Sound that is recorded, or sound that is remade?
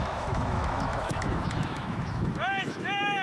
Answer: remade